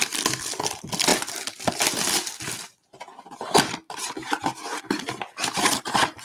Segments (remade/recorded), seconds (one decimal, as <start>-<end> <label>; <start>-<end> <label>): 0.0-1.1 remade; 1.1-4.8 recorded; 4.8-6.2 remade

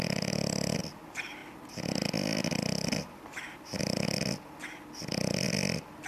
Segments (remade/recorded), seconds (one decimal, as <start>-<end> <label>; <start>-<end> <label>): 0.0-6.1 recorded

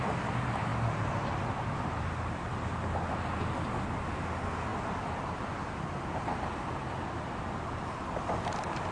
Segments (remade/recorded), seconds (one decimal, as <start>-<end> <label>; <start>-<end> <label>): 0.0-8.9 recorded

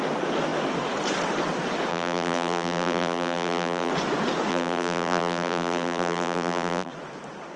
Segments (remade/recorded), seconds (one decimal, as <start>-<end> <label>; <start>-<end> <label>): 0.0-1.9 recorded; 1.9-3.9 remade; 3.9-4.5 recorded; 4.5-6.9 remade; 6.9-7.6 recorded